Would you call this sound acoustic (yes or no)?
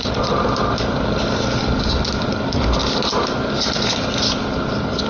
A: yes